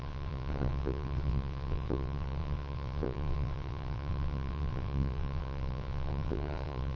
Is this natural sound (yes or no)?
no